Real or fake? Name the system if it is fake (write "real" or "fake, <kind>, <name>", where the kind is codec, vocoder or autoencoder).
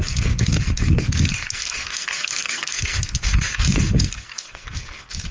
fake, codec, SNAC